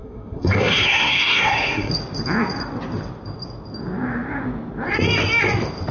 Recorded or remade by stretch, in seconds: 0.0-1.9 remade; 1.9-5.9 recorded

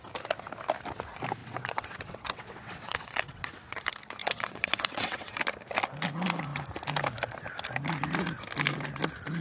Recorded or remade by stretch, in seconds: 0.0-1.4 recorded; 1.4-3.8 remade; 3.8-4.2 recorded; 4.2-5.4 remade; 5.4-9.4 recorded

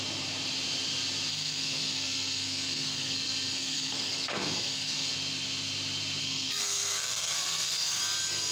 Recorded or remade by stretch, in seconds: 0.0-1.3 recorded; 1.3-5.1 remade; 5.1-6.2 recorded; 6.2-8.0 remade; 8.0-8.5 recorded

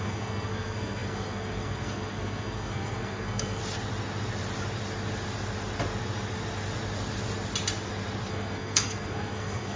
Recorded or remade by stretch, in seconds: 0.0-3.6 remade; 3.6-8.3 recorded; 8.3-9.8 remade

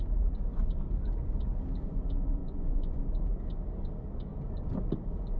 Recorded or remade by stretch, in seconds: 0.0-2.4 recorded; 2.4-3.0 remade; 3.0-5.4 recorded

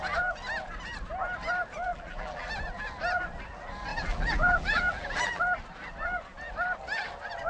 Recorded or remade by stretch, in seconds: 0.0-1.9 recorded; 1.9-2.5 remade; 2.5-3.9 recorded; 3.9-5.4 remade; 5.4-7.5 recorded